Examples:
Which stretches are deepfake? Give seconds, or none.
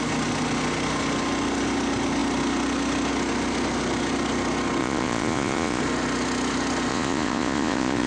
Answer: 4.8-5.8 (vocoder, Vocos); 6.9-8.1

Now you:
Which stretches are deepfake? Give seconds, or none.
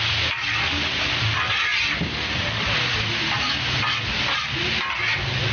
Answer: none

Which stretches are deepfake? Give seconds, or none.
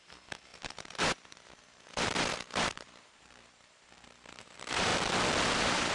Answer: 0.0-4.9 (vocoder, BigVGAN v2); 5.5-5.9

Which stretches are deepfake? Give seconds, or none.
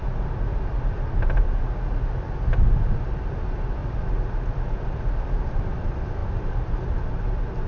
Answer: 3.8-5.8 (vocoder, BigVGAN v2); 6.2-6.9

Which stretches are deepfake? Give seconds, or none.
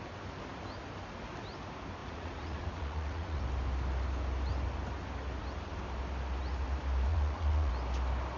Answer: 2.0-3.4 (vocoder, Vocos); 7.1-7.7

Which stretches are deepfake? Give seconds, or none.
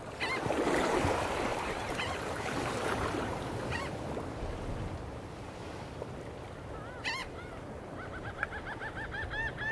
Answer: 1.5-3.8 (vocoder, BigVGAN v2); 7.2-8.2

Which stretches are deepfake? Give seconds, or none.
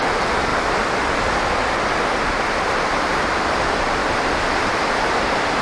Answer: 0.0-0.5 (vocoder, BigVGAN v2); 2.9-5.6